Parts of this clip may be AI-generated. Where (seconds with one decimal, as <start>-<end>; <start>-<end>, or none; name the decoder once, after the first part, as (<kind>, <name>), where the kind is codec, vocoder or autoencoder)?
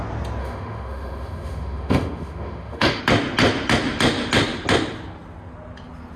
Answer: 0.4-3.0 (autoencoder, DAC-VAE)